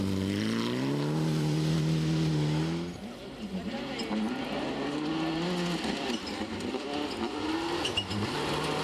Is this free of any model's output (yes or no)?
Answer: yes